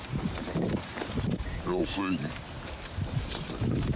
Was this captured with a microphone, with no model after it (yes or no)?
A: no